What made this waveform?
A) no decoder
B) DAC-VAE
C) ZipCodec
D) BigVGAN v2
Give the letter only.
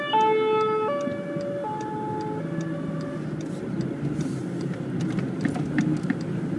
A